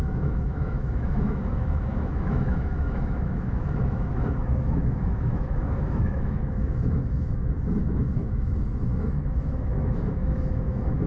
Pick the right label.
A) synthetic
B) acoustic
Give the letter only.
A